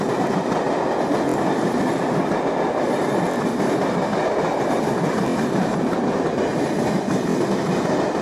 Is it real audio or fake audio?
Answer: real